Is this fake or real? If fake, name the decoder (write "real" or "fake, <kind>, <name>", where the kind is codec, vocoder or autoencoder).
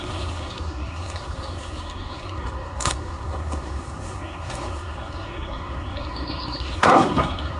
fake, codec, SNAC